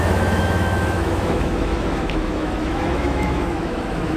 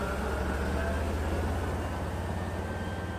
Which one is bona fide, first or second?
second